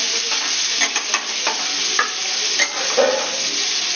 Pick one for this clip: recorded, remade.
recorded